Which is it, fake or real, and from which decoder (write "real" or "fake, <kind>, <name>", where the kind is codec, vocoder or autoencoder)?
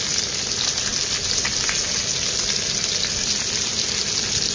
real